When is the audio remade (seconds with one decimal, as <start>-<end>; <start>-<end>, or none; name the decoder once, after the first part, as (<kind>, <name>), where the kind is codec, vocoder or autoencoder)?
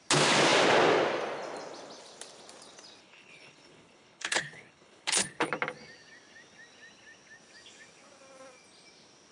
3.0-5.5 (codec, HILCodec)